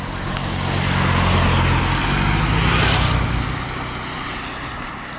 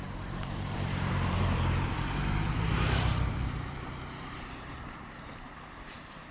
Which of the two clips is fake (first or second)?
second